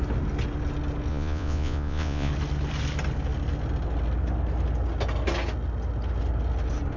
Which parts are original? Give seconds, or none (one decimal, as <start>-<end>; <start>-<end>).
0.0-1.1; 2.3-7.0